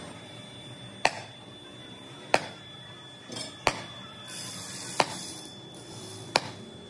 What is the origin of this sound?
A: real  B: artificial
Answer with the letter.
B